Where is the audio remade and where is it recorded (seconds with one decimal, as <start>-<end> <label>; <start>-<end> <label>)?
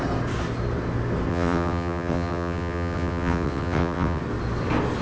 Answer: 0.0-1.3 recorded; 1.3-4.2 remade; 4.2-5.0 recorded